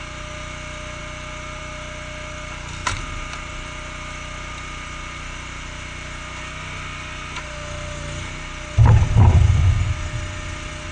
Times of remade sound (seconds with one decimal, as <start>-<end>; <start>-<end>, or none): none